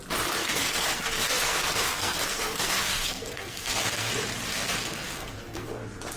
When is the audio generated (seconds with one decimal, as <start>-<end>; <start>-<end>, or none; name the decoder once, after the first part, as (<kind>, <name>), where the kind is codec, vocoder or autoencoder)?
0.4-4.1 (codec, SNAC); 4.5-5.8